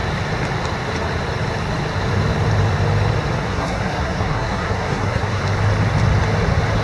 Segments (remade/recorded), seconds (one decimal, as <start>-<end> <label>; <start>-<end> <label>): 0.0-3.4 recorded; 3.4-5.4 remade; 5.4-6.8 recorded